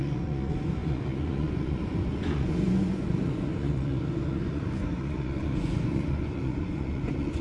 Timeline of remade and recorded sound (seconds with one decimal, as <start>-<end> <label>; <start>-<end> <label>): 0.0-7.4 remade